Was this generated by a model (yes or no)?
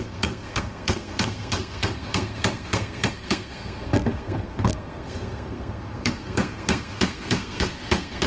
yes